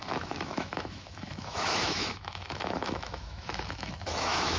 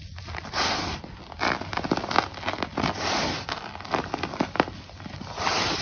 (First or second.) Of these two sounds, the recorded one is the second